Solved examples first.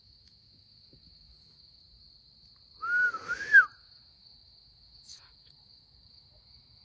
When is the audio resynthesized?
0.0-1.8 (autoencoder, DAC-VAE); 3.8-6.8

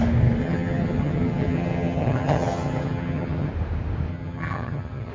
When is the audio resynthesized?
0.4-3.5 (vocoder, HiFi-GAN); 4.1-5.1

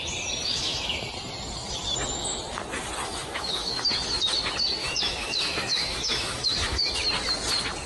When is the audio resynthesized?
0.4-1.1 (autoencoder, DAC-VAE); 3.0-3.8; 4.8-6.9

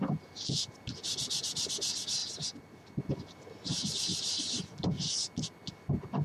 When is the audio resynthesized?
2.2-3.0 (vocoder, BigVGAN v2); 4.1-4.9

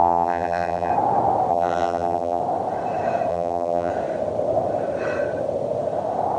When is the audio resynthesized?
0.0-0.9 (vocoder, BigVGAN v2); 1.5-2.4; 3.3-3.9

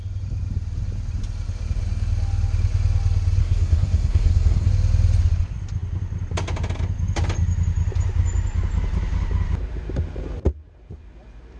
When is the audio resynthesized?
3.4-4.7 (codec, SNAC)

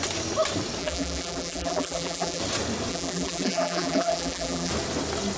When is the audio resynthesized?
0.8-2.4 (vocoder, BigVGAN v2); 2.9-4.7